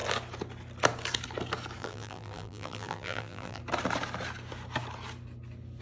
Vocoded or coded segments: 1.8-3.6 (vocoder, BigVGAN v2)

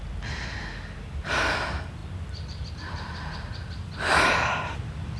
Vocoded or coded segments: none

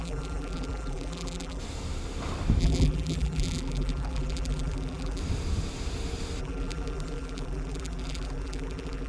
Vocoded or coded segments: 0.0-1.6 (vocoder, BigVGAN v2); 2.6-5.2; 6.4-9.1

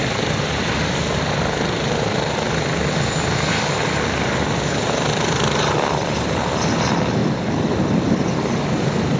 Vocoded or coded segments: 7.2-7.7 (vocoder, BigVGAN v2)

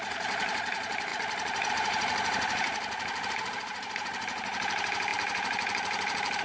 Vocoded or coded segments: 0.0-1.1 (vocoder, BigVGAN v2); 1.7-6.4

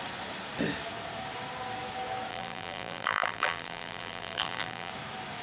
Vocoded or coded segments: 2.3-4.9 (vocoder, BigVGAN v2)

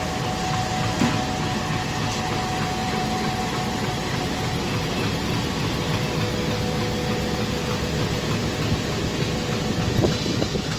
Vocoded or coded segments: 2.8-6.1 (vocoder, BigVGAN v2)

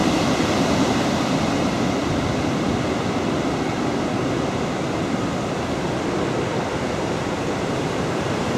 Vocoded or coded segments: 0.6-2.0 (vocoder, BigVGAN v2); 6.8-8.6